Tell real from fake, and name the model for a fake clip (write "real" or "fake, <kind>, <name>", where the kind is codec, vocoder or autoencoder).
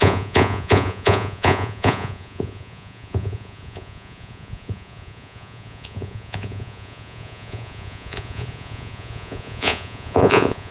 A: fake, vocoder, Vocos